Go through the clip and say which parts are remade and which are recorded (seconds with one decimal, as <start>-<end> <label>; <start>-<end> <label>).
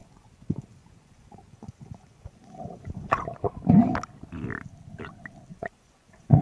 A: 0.0-3.8 remade; 3.8-5.5 recorded; 5.5-6.4 remade